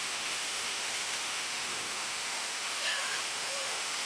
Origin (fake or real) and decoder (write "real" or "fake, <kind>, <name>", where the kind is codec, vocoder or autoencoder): fake, autoencoder, DAC-VAE